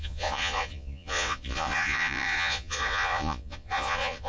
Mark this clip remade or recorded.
remade